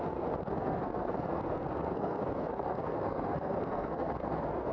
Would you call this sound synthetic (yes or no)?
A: yes